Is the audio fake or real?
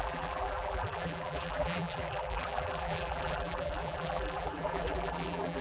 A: fake